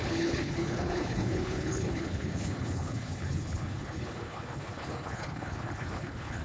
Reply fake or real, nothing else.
fake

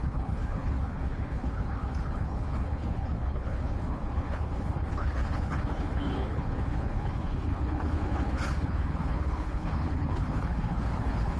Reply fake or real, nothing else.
fake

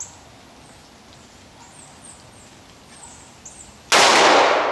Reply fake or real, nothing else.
real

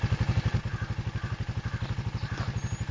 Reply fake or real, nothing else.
real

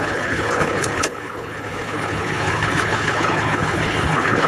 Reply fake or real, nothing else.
fake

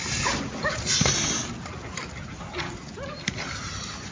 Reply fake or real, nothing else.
real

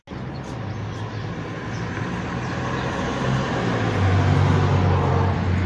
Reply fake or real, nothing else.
real